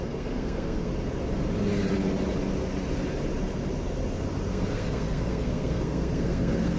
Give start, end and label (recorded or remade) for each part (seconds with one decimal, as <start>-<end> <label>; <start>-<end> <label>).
0.0-0.9 remade; 0.9-4.5 recorded; 4.5-6.8 remade